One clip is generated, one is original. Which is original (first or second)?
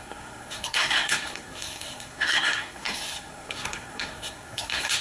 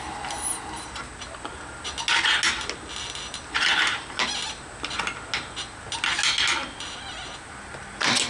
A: second